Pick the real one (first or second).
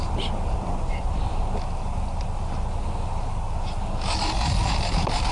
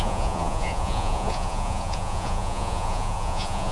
first